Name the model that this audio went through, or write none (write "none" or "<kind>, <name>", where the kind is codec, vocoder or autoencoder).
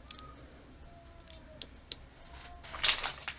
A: none